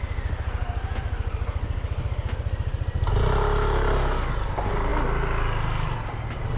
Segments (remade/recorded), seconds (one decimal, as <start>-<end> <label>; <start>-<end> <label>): 0.0-6.6 recorded